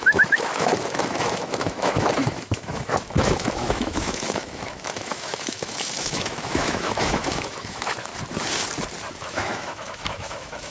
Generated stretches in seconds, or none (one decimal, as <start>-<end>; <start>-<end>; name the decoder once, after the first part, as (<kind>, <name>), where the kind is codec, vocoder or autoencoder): 0.0-8.1 (autoencoder, DAC-VAE); 9.2-10.7